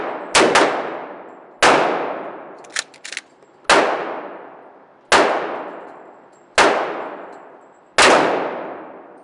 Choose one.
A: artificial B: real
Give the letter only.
B